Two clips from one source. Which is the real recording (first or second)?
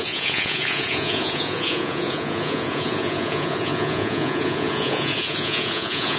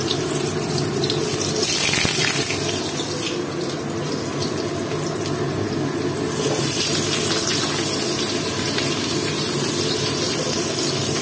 second